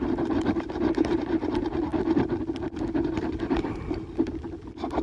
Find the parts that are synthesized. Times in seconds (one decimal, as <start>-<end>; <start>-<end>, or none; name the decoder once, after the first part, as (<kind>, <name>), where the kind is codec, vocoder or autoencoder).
none